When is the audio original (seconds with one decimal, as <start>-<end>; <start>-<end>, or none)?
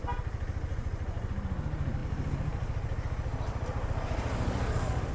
0.0-0.7; 1.3-5.1